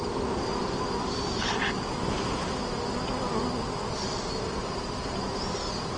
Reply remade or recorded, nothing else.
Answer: recorded